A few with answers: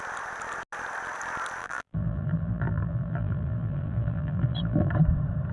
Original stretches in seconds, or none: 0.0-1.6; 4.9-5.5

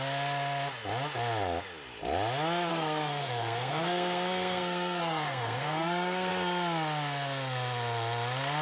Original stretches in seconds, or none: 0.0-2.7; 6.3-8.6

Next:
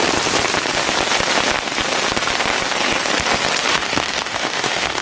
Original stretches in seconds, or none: 0.0-3.7

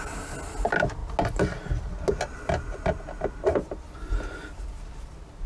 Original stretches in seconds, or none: 0.0-5.5

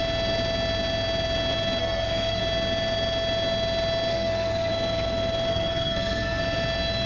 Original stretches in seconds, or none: 0.0-1.8; 2.4-4.1; 4.7-5.5; 6.4-7.1